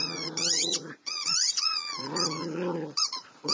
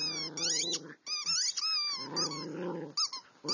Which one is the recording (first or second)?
second